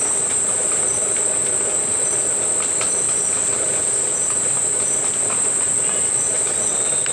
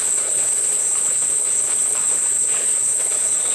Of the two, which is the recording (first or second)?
first